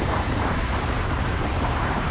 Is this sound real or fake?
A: fake